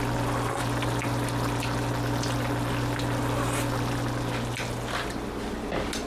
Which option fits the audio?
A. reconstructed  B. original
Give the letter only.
B